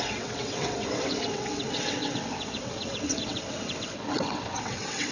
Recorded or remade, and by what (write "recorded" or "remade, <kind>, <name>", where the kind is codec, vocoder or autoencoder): remade, vocoder, WaveNeXt